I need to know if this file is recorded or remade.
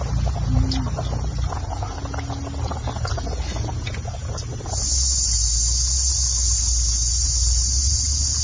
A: recorded